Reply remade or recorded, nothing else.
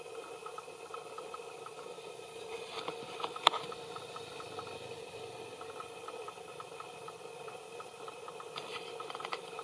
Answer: recorded